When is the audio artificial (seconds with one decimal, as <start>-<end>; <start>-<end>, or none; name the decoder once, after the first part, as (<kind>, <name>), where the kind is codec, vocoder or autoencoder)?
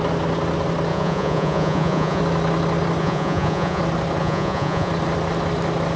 0.9-2.2 (vocoder, Vocos); 3.0-3.8; 4.2-4.9